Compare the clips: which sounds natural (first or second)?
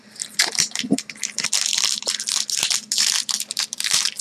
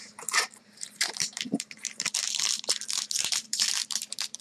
first